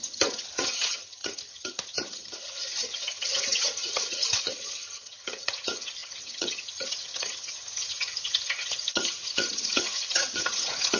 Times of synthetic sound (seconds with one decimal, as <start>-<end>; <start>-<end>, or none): 0.0-11.0